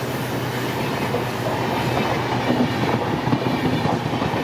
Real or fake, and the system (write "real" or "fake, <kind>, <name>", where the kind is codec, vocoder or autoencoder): real